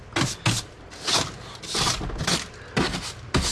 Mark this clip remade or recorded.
recorded